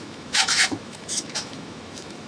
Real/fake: fake